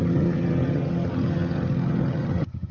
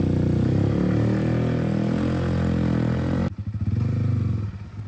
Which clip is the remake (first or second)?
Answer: first